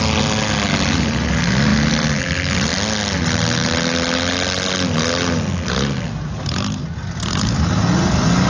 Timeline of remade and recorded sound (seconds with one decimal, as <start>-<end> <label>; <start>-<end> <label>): 0.0-8.5 recorded